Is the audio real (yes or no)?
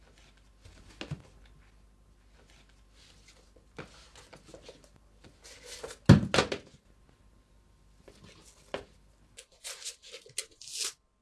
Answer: yes